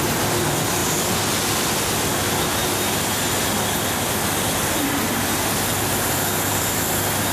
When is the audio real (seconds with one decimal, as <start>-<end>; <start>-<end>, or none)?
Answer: 0.0-7.3